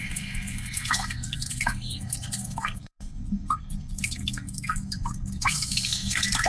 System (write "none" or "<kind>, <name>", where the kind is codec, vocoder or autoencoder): codec, SNAC